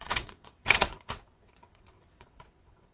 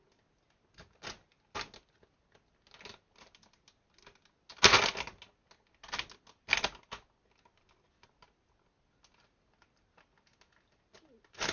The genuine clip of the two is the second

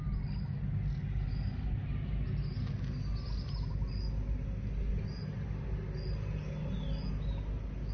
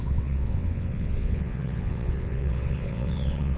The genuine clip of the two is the first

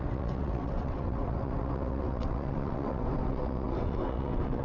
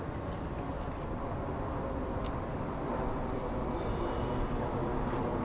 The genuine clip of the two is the second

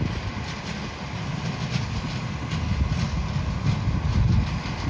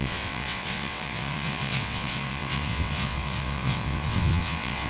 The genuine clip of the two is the first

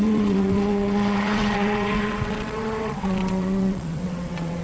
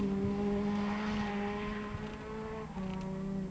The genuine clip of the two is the second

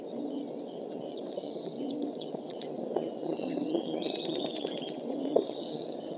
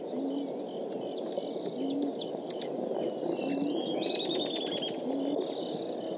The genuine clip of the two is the second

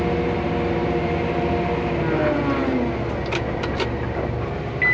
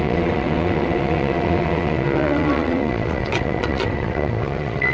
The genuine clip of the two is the first